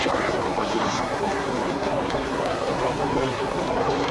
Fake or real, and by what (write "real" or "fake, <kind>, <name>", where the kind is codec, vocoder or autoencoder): fake, codec, SNAC